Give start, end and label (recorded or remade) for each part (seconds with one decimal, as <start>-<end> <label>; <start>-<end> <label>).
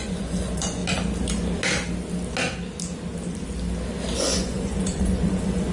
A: 0.0-0.8 remade; 0.8-4.2 recorded; 4.2-5.7 remade